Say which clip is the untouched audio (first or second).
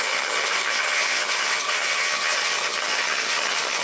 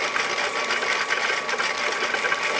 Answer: second